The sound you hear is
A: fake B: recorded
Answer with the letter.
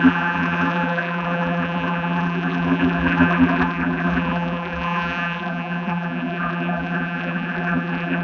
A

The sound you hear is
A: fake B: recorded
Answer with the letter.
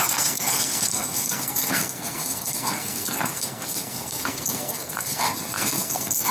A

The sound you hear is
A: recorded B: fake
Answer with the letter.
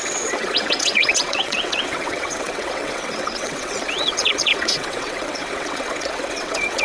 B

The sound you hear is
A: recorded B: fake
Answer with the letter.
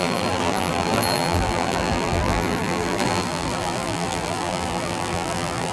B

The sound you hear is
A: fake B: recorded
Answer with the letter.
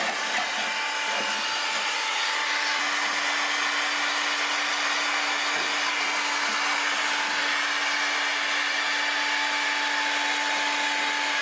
B